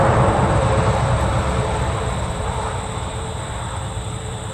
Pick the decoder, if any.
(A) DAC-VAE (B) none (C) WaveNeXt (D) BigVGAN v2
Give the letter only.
D